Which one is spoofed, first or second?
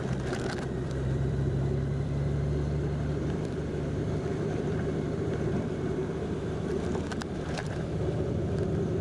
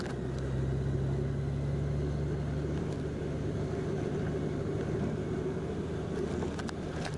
first